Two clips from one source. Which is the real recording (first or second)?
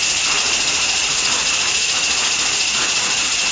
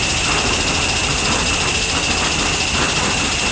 second